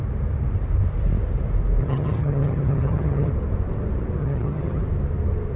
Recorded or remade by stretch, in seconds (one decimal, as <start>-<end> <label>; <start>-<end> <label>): 0.0-1.8 recorded; 1.8-3.3 remade; 3.3-4.2 recorded; 4.2-4.8 remade; 4.8-5.6 recorded